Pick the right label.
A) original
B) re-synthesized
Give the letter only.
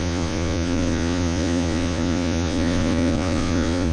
B